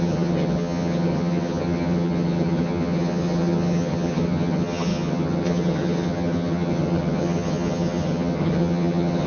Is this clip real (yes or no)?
no